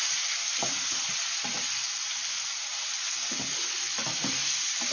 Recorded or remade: recorded